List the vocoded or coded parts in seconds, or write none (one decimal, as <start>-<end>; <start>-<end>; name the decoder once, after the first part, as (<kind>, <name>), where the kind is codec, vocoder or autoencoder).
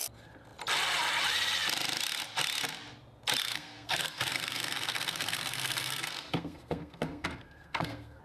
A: 3.4-8.2 (codec, SNAC)